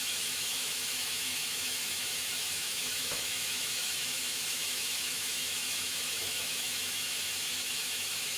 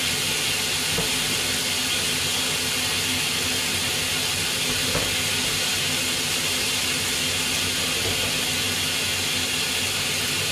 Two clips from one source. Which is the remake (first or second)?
first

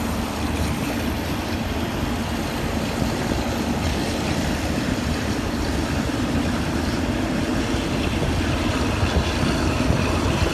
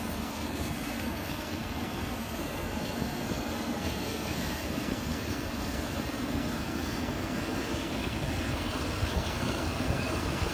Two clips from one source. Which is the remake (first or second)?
second